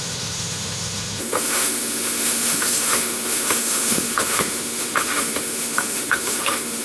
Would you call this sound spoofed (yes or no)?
yes